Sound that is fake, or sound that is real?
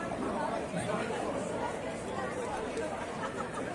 fake